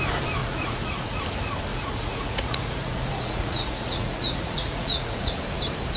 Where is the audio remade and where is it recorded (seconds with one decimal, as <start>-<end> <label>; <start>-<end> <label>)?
0.0-0.4 recorded; 0.4-1.2 remade; 1.2-1.7 recorded; 1.7-5.3 remade; 5.3-6.0 recorded